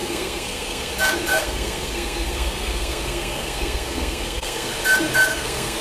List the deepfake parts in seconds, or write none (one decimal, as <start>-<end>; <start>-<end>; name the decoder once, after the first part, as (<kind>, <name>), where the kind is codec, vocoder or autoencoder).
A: 0.0-0.9 (codec, SNAC); 1.3-4.7; 5.3-5.8